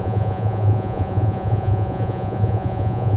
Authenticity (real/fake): fake